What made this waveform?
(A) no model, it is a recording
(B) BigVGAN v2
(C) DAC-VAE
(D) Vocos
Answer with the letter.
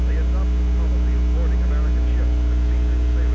A